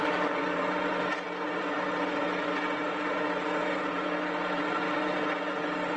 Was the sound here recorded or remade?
recorded